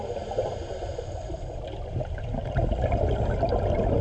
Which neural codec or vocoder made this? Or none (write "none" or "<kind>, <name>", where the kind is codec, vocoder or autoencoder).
none